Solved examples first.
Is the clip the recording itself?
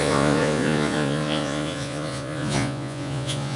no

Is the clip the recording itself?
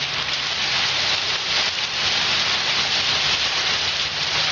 yes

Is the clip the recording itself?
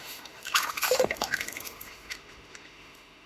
no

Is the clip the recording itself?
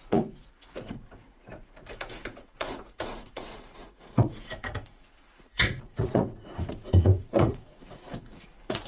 no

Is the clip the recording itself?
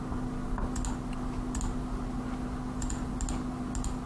yes